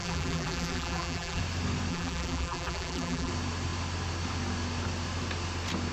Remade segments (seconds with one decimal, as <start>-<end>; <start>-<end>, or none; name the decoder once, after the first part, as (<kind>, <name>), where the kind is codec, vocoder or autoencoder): 0.0-1.4 (vocoder, BigVGAN v2); 1.9-3.3